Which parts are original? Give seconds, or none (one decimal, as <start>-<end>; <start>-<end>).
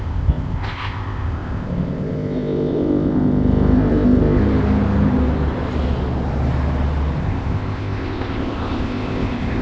4.4-7.2